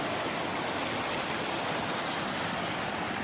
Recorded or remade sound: recorded